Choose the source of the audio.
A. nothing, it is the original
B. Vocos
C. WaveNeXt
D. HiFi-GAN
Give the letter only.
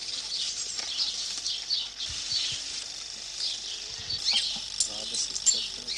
A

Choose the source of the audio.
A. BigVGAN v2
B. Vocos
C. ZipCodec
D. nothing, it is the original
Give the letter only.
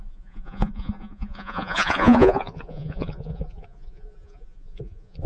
B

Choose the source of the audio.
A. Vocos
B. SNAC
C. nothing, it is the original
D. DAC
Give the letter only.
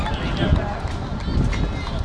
C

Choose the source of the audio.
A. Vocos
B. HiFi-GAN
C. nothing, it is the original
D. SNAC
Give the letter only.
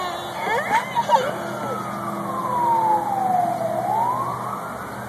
C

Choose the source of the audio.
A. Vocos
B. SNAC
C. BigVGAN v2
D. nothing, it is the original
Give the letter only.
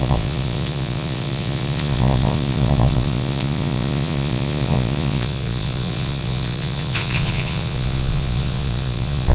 A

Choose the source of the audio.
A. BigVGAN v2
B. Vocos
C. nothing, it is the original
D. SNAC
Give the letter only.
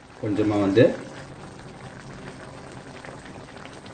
C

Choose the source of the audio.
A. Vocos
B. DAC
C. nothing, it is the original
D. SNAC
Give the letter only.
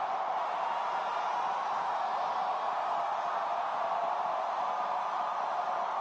C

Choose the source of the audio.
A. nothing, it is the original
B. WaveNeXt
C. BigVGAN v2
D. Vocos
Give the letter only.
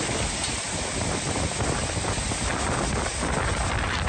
A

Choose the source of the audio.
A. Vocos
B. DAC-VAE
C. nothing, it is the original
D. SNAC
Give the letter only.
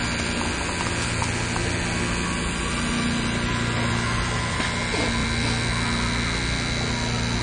C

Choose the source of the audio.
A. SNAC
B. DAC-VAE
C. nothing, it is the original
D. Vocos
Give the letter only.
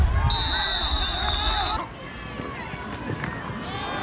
C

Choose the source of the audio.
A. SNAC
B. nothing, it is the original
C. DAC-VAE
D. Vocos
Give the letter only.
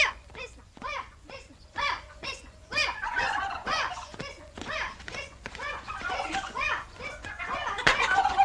D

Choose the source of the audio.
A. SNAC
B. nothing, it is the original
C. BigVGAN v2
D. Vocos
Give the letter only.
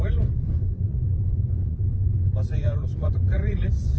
D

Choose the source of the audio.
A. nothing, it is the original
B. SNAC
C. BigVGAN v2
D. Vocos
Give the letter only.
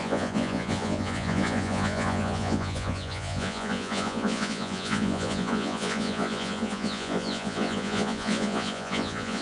D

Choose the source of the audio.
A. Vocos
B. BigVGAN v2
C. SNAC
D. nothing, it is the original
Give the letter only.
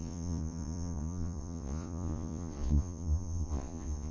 A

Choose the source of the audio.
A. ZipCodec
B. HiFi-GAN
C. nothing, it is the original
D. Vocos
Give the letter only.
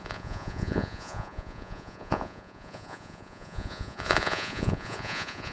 D